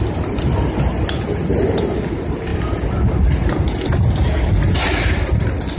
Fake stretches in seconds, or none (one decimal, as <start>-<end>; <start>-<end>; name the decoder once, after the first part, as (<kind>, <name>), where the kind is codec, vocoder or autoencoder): none

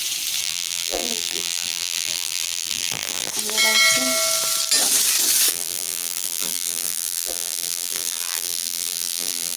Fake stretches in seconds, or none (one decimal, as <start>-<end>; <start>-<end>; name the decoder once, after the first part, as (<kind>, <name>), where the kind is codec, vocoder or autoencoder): 0.4-3.3 (vocoder, BigVGAN v2); 5.5-9.6

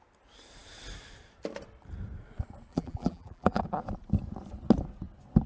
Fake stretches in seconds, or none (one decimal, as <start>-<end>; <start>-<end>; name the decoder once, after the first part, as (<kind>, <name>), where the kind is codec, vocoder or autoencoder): 2.7-3.6 (vocoder, BigVGAN v2)